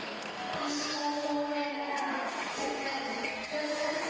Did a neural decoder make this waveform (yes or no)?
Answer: yes